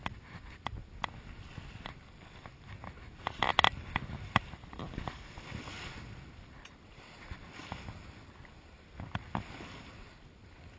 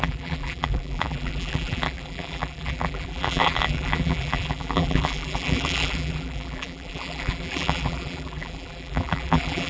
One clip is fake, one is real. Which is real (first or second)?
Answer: first